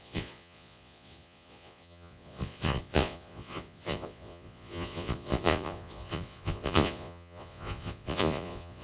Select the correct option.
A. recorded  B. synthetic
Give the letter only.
B